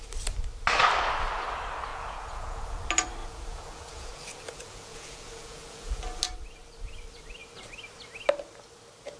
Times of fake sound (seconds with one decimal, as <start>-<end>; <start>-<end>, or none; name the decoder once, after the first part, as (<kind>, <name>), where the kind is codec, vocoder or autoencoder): 1.9-2.8 (vocoder, Vocos); 3.2-6.0